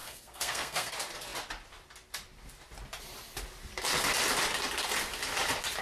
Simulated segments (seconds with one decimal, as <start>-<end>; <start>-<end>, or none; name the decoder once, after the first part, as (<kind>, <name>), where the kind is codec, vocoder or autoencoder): 0.0-0.9 (codec, SNAC)